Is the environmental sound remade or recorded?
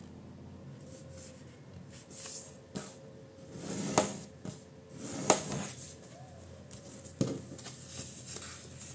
recorded